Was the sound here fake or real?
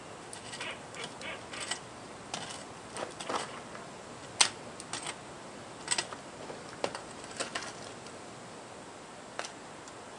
real